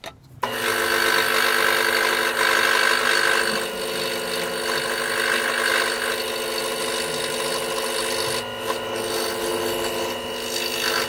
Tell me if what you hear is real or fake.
real